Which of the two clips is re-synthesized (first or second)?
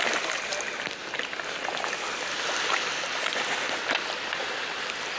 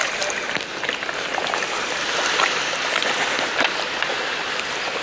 second